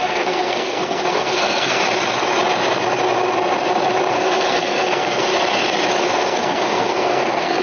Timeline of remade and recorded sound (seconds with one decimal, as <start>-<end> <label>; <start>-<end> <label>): 0.0-1.8 remade; 1.8-4.1 recorded; 4.1-5.3 remade; 5.3-6.0 recorded; 6.0-7.6 remade